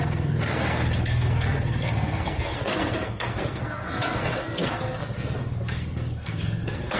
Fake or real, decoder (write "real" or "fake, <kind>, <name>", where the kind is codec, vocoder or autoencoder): fake, codec, SNAC